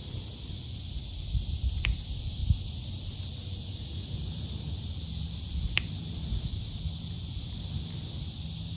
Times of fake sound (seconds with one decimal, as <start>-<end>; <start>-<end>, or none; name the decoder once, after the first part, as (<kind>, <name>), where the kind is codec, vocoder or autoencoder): none